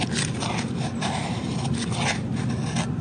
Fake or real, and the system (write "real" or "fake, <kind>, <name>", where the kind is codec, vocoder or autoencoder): real